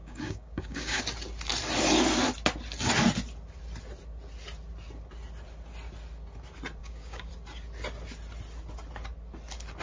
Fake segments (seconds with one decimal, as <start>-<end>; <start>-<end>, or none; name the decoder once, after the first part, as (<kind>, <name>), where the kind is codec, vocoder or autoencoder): 0.0-1.0 (codec, DAC); 6.8-7.3